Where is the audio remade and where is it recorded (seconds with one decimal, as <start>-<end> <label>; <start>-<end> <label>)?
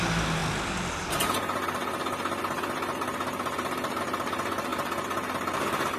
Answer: 0.0-6.0 recorded